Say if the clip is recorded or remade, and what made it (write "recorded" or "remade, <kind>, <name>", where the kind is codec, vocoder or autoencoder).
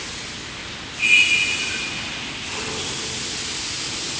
recorded